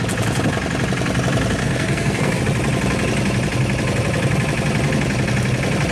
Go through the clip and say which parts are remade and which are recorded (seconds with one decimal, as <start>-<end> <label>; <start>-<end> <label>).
0.0-1.6 recorded; 1.6-2.4 remade; 2.4-5.9 recorded